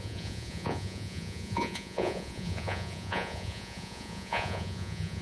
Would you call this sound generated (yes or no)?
yes